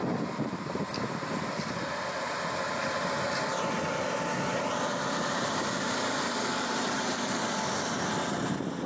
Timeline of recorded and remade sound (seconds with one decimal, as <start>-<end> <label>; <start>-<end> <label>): 0.0-8.9 recorded